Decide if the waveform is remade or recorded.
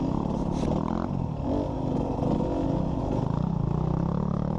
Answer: recorded